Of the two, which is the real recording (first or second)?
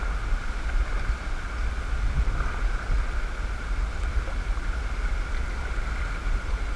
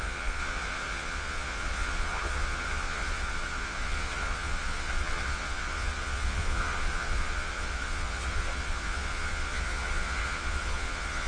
first